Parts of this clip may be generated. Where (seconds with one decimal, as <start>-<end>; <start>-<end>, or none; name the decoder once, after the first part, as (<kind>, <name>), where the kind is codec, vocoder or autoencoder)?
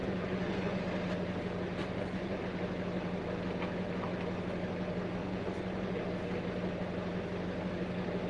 0.0-0.8 (vocoder, Vocos); 1.8-2.4; 5.2-6.0